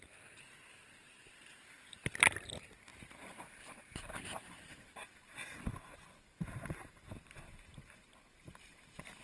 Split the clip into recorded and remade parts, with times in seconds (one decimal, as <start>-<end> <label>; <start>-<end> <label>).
0.0-1.5 recorded; 1.5-2.5 remade; 2.5-2.9 recorded; 2.9-4.7 remade; 4.7-6.3 recorded; 6.3-6.9 remade; 6.9-9.2 recorded